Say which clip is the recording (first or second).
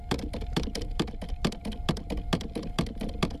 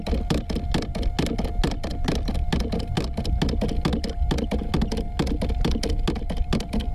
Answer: second